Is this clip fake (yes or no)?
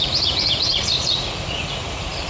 yes